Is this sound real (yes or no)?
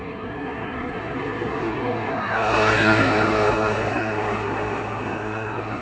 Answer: no